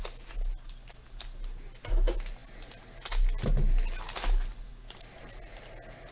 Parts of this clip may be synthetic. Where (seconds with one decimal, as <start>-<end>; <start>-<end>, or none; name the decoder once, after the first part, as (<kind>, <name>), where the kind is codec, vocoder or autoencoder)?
none